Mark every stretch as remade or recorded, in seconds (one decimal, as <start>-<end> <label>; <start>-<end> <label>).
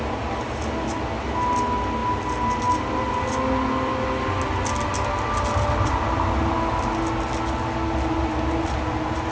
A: 0.0-9.3 recorded